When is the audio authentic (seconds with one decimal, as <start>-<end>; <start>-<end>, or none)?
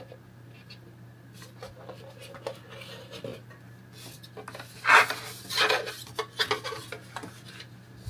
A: 0.0-8.1